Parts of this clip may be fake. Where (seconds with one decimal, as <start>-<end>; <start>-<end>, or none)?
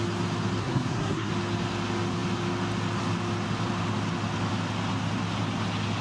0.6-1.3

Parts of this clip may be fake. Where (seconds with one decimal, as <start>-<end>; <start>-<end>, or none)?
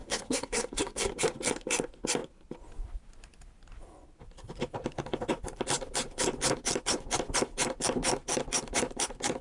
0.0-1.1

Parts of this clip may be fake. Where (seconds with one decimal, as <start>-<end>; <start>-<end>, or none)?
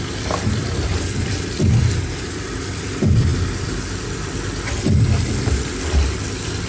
none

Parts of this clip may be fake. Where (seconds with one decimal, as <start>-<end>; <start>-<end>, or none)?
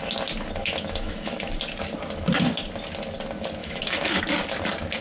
0.6-1.5; 3.6-4.2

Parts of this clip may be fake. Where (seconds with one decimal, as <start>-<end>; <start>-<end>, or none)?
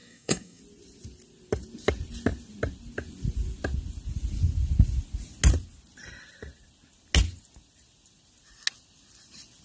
0.0-0.6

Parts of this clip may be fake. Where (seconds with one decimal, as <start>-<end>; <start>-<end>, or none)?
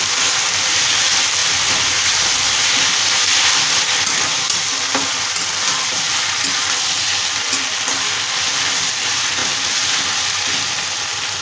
none